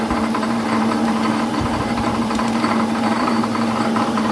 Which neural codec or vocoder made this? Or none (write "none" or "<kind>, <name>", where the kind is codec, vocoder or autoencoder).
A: vocoder, BigVGAN v2